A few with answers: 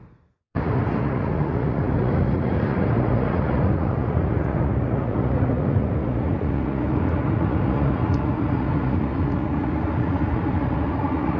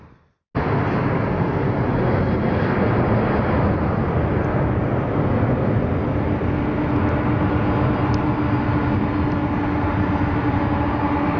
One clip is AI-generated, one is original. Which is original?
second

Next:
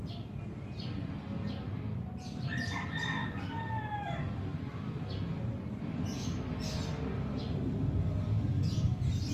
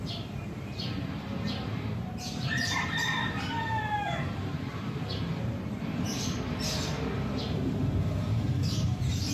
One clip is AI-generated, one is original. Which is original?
first